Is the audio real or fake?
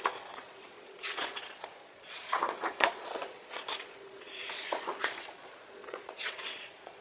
fake